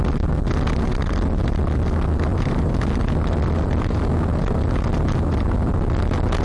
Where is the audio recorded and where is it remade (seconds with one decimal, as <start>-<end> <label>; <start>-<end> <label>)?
0.0-2.3 recorded; 2.3-2.8 remade; 2.8-6.4 recorded